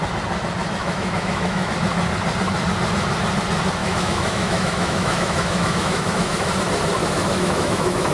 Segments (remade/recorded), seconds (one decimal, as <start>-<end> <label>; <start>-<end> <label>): 0.0-0.8 recorded; 0.8-1.7 remade; 1.7-3.8 recorded; 3.8-6.5 remade; 6.5-7.0 recorded; 7.0-8.1 remade